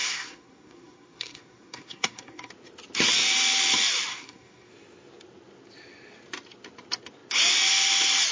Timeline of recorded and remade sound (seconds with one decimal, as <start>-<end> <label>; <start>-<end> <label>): 0.0-2.5 remade; 2.5-4.1 recorded; 4.1-4.7 remade; 4.7-8.3 recorded